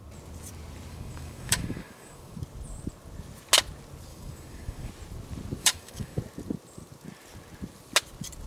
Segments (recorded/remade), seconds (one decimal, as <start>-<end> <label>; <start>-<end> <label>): 0.0-0.9 recorded; 0.9-2.4 remade; 2.4-4.1 recorded; 4.1-4.9 remade; 4.9-5.6 recorded; 5.6-6.2 remade; 6.2-8.5 recorded